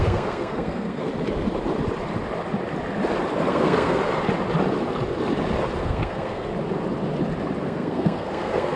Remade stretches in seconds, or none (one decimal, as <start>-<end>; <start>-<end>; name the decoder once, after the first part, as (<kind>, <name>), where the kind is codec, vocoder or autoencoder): 0.0-1.1 (codec, SNAC); 3.5-4.0; 5.8-6.5; 7.6-8.8